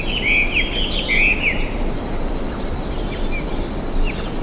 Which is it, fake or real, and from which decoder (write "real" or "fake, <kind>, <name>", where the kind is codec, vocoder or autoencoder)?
real